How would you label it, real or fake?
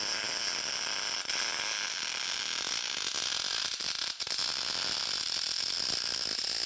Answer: real